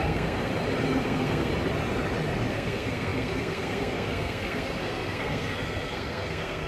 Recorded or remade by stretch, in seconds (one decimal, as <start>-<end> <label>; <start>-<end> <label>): 0.0-0.5 remade; 0.5-1.0 recorded; 1.0-1.5 remade; 1.5-2.5 recorded; 2.5-6.7 remade